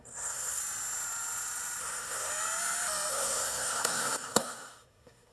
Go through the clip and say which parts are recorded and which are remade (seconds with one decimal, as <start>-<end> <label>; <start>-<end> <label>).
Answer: 0.0-0.6 remade; 0.6-1.8 recorded; 1.8-2.3 remade; 2.3-3.1 recorded; 3.1-5.3 remade